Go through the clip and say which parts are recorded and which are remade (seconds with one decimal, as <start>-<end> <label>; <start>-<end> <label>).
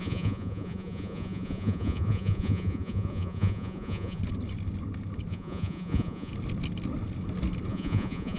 0.0-4.2 remade; 4.2-5.3 recorded; 5.3-6.3 remade; 6.3-7.7 recorded; 7.7-8.4 remade